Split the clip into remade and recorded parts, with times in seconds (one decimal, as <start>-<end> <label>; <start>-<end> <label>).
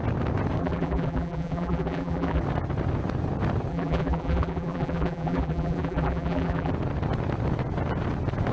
0.0-0.6 recorded; 0.6-2.4 remade; 2.4-3.7 recorded; 3.7-6.7 remade; 6.7-8.5 recorded